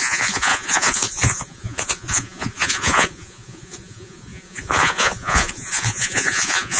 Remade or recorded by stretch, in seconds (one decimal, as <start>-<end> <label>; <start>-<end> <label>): 0.0-6.8 remade